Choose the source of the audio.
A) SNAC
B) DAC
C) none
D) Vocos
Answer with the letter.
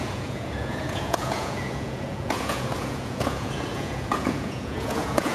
D